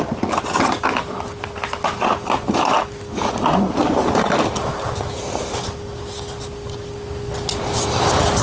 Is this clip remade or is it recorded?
recorded